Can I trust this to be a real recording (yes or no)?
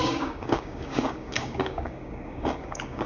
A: no